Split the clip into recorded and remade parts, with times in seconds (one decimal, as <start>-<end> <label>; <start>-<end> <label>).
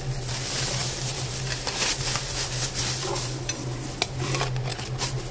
0.0-5.3 recorded